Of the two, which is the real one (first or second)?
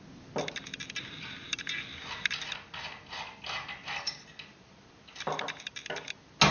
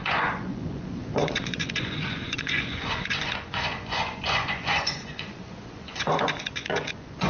first